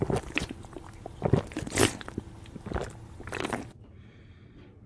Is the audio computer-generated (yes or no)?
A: no